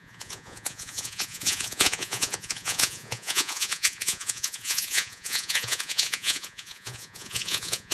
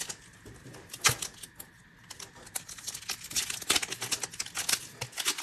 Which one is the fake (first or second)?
first